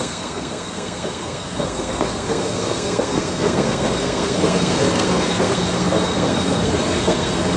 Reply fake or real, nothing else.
fake